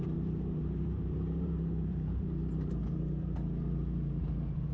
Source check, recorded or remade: remade